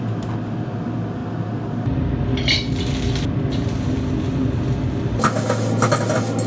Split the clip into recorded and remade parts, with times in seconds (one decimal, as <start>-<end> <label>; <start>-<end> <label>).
0.0-6.5 recorded